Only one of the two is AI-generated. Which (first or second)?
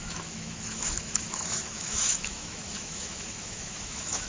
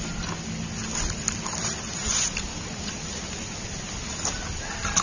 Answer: first